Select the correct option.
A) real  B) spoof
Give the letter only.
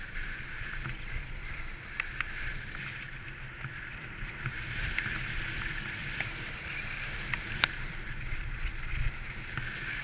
B